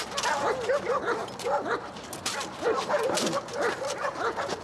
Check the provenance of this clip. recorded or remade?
recorded